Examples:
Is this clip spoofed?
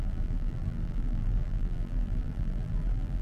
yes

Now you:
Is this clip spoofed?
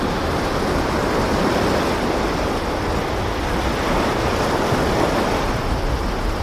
no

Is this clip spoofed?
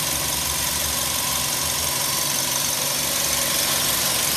no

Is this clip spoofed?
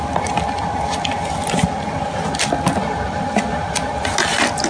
no